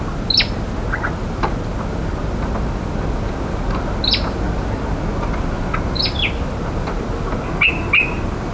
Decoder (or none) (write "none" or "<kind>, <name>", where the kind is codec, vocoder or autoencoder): none